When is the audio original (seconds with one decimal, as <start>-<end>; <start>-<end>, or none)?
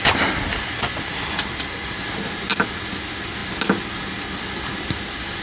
0.0-5.4